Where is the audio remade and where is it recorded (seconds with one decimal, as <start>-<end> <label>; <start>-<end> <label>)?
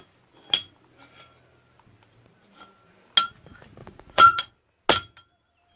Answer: 0.0-3.8 recorded; 3.8-4.5 remade; 4.5-5.8 recorded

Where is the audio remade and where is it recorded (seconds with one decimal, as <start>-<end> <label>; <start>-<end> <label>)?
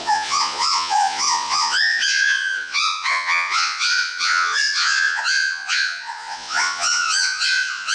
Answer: 0.0-7.9 remade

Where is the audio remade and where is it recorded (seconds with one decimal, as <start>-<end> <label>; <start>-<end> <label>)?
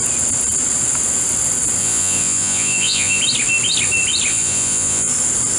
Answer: 0.0-1.8 recorded; 1.8-3.2 remade; 3.2-4.3 recorded; 4.3-5.1 remade; 5.1-5.6 recorded